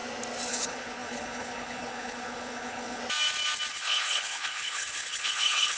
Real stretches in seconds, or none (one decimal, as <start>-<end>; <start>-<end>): 0.0-0.5; 3.0-3.7